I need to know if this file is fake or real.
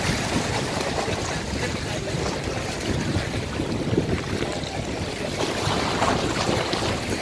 real